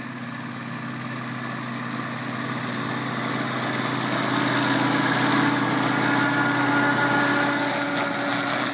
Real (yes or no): yes